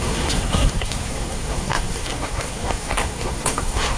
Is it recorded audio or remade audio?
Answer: remade